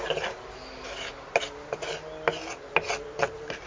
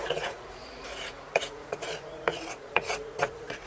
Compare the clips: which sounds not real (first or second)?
second